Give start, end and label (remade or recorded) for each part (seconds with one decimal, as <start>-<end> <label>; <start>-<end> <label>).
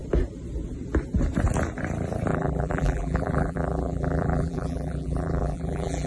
0.0-2.3 recorded; 2.3-6.1 remade